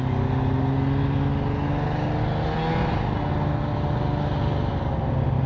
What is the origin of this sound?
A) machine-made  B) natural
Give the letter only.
B